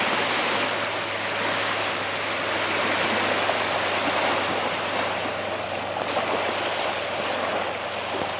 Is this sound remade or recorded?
recorded